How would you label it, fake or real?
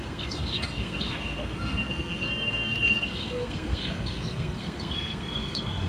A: fake